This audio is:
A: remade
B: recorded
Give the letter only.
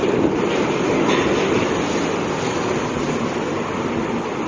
B